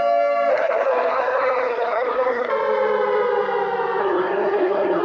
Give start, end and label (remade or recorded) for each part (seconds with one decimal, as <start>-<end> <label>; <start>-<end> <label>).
0.0-0.5 recorded; 0.5-2.5 remade; 2.5-4.0 recorded; 4.0-5.0 remade